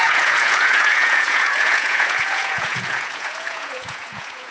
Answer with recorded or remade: remade